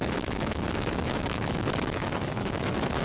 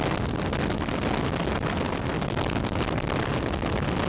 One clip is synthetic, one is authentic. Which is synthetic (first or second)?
first